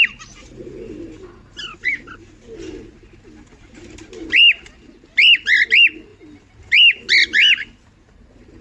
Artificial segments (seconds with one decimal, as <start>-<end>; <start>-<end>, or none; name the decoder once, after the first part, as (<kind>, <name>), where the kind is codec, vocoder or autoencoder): none